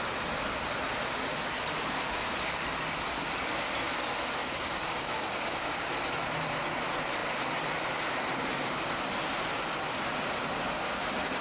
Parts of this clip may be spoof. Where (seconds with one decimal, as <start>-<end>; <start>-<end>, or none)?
4.4-5.9